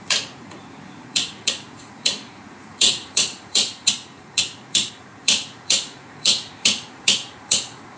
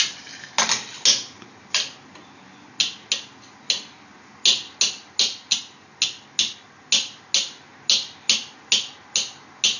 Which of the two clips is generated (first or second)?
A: first